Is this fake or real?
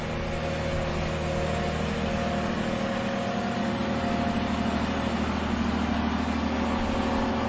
real